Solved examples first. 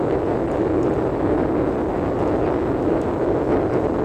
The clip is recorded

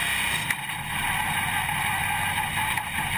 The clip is recorded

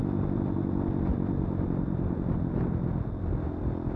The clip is recorded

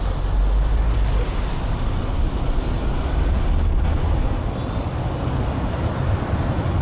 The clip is recorded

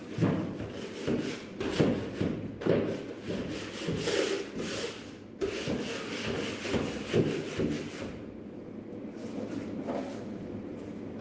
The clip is recorded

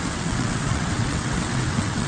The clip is remade